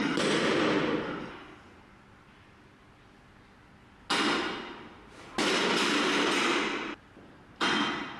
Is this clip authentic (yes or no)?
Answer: yes